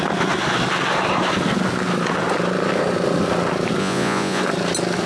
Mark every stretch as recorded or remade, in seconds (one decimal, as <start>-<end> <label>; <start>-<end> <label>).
0.0-3.8 recorded; 3.8-4.4 remade; 4.4-5.1 recorded